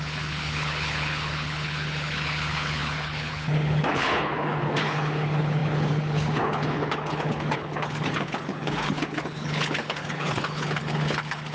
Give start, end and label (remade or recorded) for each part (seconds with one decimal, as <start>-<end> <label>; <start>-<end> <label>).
0.0-11.5 remade